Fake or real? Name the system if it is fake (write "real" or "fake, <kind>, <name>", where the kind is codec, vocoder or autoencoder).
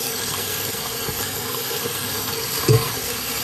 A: fake, codec, SNAC